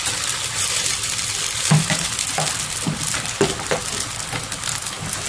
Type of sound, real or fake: real